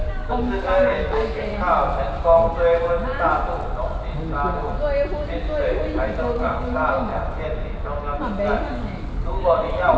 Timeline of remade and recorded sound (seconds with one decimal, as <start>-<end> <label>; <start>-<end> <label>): 0.0-1.5 remade; 1.5-6.2 recorded; 6.2-7.1 remade; 7.1-8.7 recorded; 8.7-10.0 remade